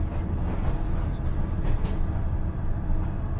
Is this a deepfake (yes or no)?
no